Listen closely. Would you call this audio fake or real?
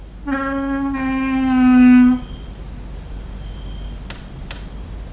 real